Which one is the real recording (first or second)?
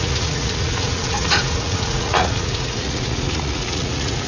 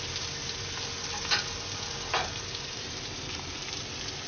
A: second